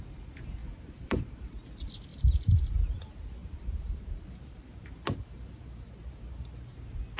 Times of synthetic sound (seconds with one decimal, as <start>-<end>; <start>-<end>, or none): 0.6-1.4; 2.1-2.7; 3.4-6.3

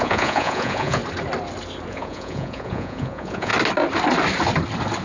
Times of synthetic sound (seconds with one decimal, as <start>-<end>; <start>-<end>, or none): 0.0-1.0; 1.9-3.5

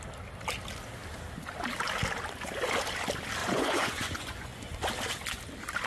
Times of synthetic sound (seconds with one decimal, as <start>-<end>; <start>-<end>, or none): 3.4-4.6